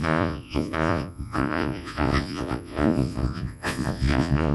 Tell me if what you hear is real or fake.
fake